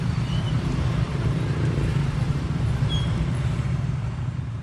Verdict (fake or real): fake